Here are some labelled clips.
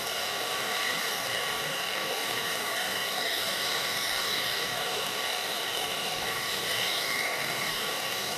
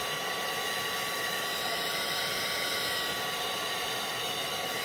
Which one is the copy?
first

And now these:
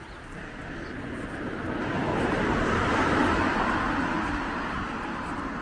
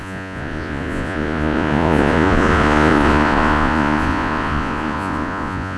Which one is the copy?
second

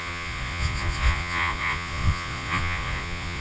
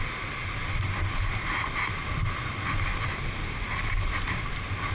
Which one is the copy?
first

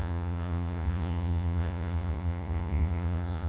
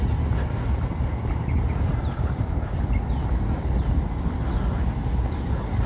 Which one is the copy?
first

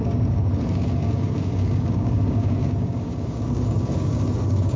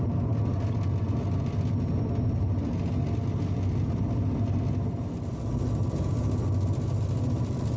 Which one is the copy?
first